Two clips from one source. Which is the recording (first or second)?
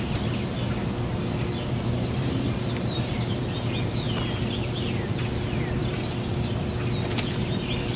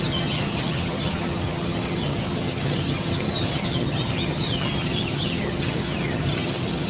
first